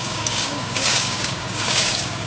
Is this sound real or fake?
fake